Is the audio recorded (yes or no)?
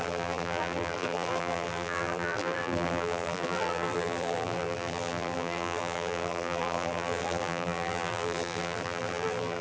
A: no